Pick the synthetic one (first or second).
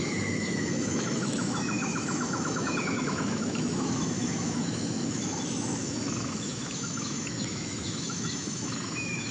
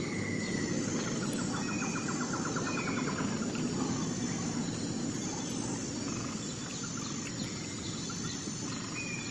first